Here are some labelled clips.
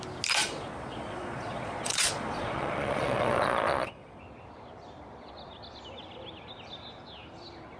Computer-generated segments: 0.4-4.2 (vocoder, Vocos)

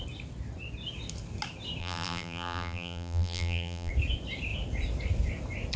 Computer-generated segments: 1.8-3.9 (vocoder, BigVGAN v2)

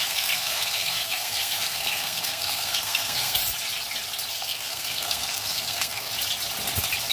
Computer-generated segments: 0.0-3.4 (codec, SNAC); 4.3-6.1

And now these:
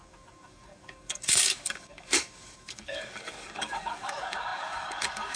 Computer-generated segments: 0.0-5.4 (codec, DAC)

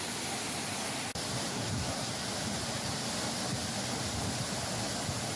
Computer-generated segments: 1.5-2.1 (codec, SNAC)

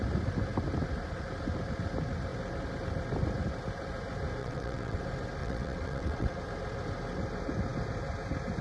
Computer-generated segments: 4.4-5.0 (vocoder, WaveNeXt); 5.4-6.4

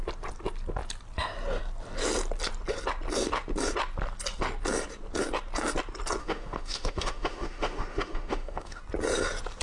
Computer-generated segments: 6.2-8.8 (autoencoder, DAC-VAE)